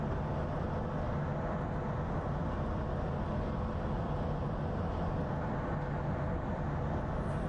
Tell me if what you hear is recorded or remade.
recorded